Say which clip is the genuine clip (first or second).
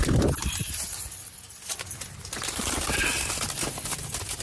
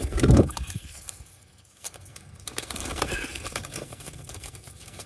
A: first